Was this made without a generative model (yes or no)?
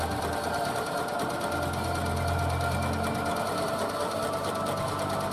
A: yes